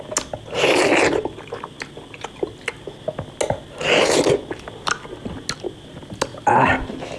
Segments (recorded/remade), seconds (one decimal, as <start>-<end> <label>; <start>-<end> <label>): 0.0-7.2 recorded